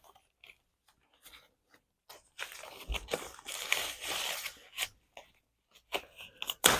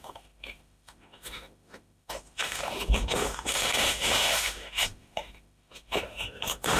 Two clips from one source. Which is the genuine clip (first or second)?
first